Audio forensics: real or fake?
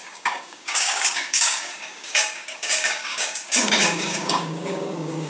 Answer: fake